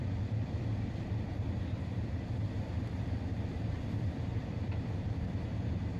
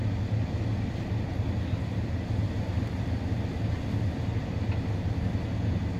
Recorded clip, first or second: second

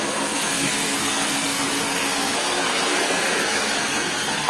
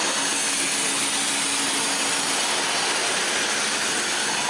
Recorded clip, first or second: second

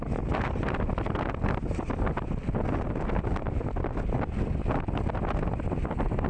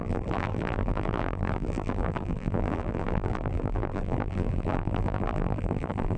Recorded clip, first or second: first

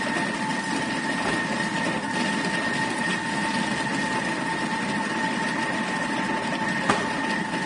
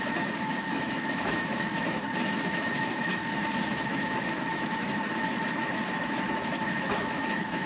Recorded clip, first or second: first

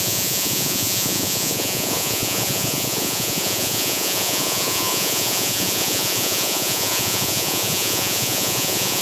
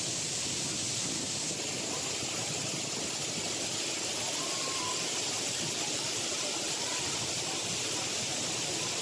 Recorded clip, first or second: second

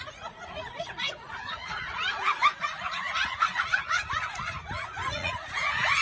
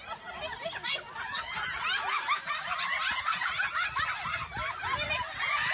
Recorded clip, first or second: second